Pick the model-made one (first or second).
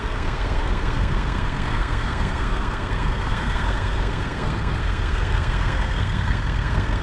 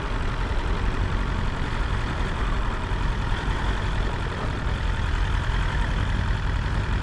first